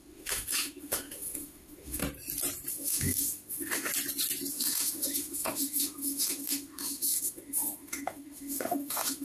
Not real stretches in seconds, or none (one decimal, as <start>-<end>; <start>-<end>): 0.0-2.0; 2.7-3.9; 4.5-9.2